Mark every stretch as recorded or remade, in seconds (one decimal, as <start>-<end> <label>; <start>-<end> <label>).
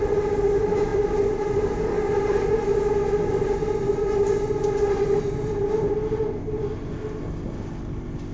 0.0-8.3 recorded